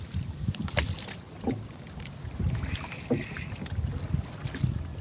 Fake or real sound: real